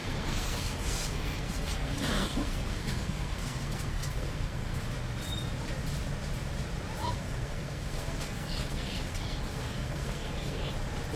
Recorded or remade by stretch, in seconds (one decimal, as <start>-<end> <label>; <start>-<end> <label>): 0.0-4.8 remade; 4.8-7.0 recorded; 7.0-10.7 remade; 10.7-11.2 recorded